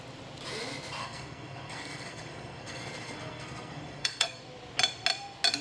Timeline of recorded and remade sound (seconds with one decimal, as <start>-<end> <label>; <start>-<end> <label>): 0.0-1.0 recorded; 1.0-4.4 remade; 4.4-5.6 recorded